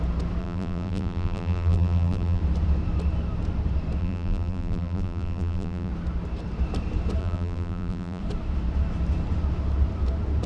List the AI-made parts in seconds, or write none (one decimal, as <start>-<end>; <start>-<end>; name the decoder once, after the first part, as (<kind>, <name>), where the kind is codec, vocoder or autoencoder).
0.4-2.4 (vocoder, BigVGAN v2); 4.0-5.9; 7.2-8.2